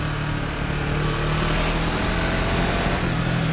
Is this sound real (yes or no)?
yes